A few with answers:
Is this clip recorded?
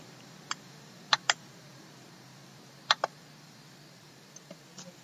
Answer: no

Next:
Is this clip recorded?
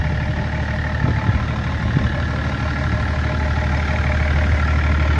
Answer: yes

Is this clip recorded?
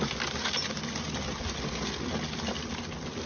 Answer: yes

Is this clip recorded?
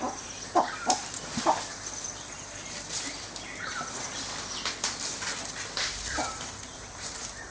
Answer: yes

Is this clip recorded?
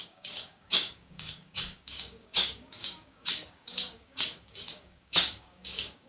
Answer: no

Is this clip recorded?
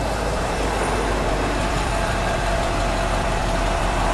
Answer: no